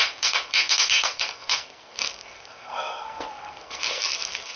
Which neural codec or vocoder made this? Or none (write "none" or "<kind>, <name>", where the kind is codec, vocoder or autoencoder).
codec, SNAC